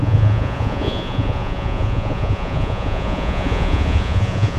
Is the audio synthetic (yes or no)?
yes